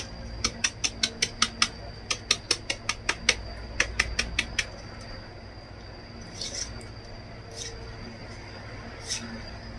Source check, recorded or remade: recorded